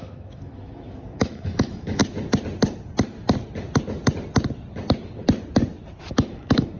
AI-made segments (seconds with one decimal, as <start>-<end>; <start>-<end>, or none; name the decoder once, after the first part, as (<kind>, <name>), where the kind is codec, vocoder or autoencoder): 0.0-2.0 (autoencoder, DAC-VAE); 6.1-6.8